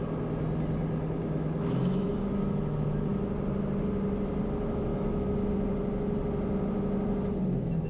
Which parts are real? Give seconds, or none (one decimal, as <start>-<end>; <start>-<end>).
0.0-1.2; 2.1-4.9; 5.5-7.9